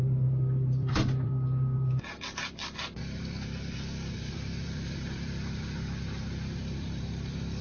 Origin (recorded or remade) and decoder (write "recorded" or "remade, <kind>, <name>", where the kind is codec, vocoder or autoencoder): remade, vocoder, BigVGAN v2